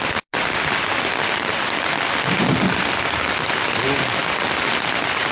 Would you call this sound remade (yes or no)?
no